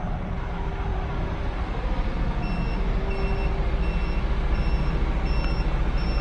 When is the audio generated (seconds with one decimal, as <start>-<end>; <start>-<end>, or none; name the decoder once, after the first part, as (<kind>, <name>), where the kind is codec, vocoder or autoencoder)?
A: 0.9-1.9 (vocoder, BigVGAN v2)